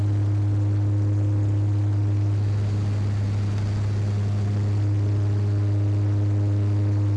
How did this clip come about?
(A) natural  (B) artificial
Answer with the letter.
A